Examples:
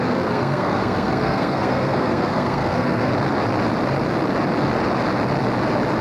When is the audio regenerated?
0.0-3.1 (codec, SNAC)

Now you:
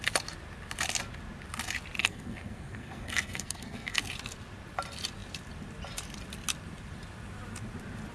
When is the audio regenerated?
2.0-4.0 (codec, SNAC)

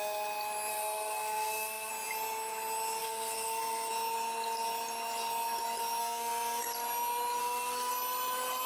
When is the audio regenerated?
0.7-1.9 (codec, SNAC); 3.0-3.9; 6.0-6.6; 7.4-7.9